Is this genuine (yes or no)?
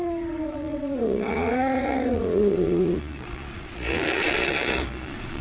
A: no